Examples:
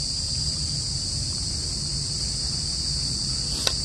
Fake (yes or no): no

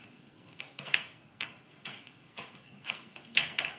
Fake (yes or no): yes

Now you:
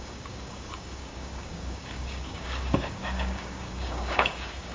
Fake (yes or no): yes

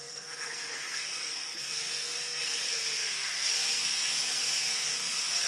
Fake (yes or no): yes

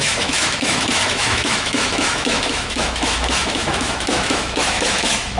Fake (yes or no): yes